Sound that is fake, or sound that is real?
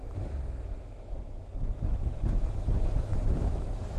fake